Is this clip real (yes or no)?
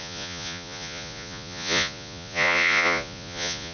no